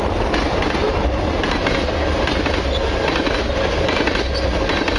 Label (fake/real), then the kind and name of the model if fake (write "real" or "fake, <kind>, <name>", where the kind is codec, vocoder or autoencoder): real